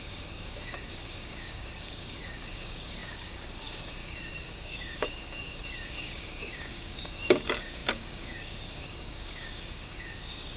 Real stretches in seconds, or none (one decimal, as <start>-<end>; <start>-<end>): none